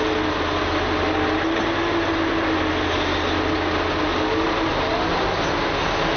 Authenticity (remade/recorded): recorded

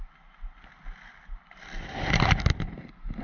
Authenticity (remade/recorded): recorded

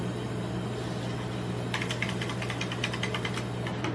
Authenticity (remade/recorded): recorded